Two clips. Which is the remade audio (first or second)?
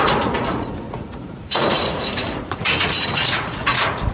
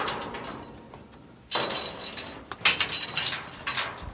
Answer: first